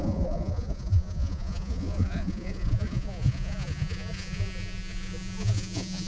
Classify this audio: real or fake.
fake